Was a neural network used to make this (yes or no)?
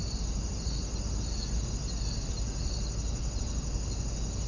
no